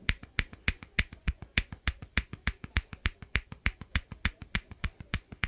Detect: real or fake fake